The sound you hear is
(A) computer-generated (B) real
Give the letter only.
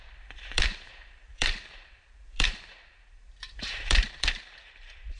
A